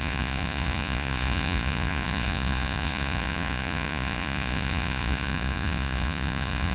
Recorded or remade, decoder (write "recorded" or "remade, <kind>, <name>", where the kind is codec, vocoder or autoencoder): remade, vocoder, Vocos